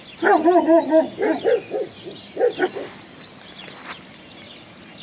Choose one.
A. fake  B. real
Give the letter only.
B